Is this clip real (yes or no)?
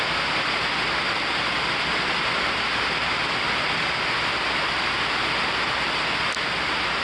yes